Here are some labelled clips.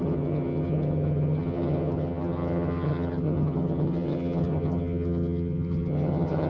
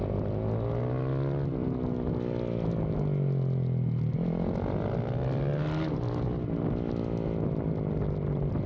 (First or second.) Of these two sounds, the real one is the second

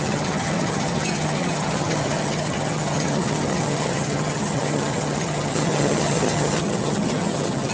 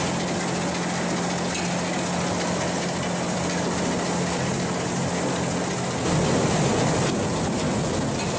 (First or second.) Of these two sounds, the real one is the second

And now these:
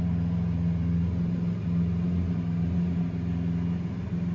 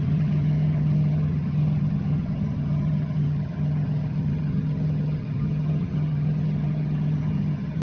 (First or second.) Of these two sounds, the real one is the first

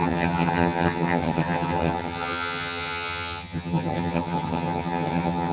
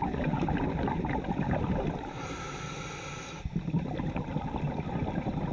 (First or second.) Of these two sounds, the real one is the second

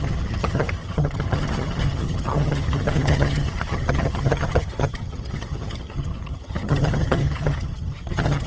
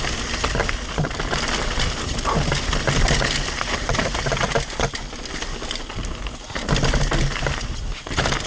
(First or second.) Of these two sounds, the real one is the second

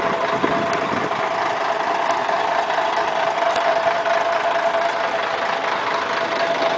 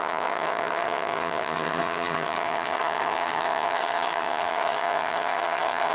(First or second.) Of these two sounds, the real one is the first